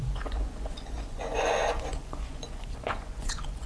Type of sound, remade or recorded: remade